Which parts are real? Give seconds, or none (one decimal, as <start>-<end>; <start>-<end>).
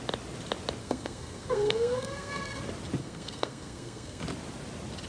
0.0-0.8; 2.6-3.0; 4.2-5.1